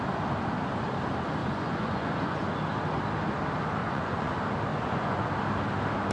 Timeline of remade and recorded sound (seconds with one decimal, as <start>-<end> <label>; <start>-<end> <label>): 0.0-1.4 recorded; 1.4-2.5 remade; 2.5-3.8 recorded; 3.8-4.3 remade; 4.3-4.7 recorded; 4.7-5.3 remade; 5.3-6.1 recorded